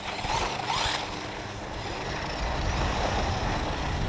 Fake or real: real